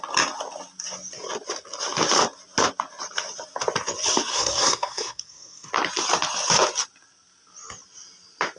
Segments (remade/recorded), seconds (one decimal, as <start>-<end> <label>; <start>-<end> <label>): 0.0-4.3 recorded; 4.3-5.7 remade; 5.7-8.6 recorded